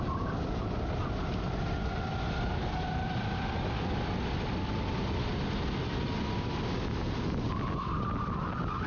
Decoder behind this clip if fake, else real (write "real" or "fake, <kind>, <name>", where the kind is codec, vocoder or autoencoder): real